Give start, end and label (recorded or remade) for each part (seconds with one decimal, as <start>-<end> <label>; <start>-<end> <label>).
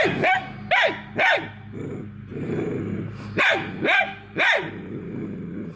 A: 0.0-2.3 recorded; 2.3-3.4 remade; 3.4-5.8 recorded